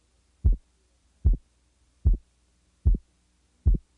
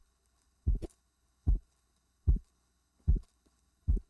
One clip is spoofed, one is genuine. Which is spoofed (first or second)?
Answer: second